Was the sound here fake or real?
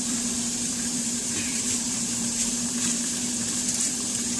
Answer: fake